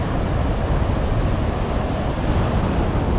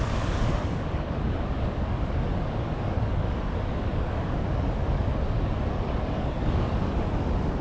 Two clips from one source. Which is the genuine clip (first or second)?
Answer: first